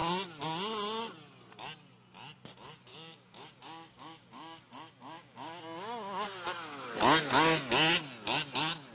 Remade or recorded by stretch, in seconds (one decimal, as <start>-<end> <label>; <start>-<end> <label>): 0.0-2.9 recorded; 2.9-5.6 remade; 5.6-8.9 recorded